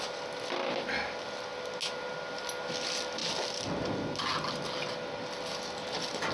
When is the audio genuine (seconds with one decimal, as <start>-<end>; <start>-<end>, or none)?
0.0-6.3